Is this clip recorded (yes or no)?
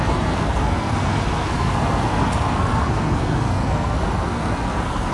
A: no